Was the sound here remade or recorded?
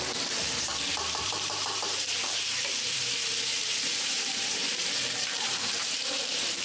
remade